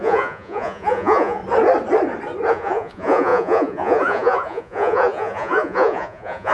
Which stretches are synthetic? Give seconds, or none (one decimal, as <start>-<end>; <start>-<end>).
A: 0.0-1.4; 2.5-6.5